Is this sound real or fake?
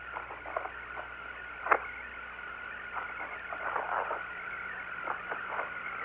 real